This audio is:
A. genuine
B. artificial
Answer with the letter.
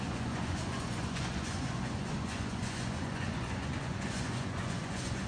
B